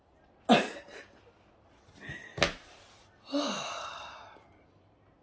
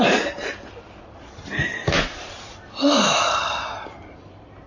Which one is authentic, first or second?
first